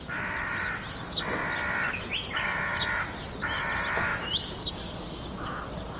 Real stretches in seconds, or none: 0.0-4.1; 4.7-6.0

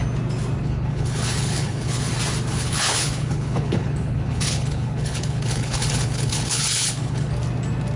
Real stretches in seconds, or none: 0.0-0.6; 2.1-2.5; 7.3-8.0